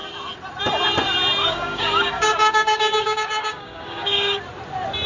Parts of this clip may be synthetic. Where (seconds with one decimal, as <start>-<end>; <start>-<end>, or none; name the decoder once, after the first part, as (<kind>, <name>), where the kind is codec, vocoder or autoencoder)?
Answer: 1.4-4.4 (codec, DAC)